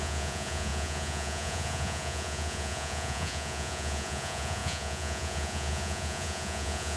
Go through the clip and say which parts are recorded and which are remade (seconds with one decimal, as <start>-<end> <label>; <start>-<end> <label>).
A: 0.0-7.0 remade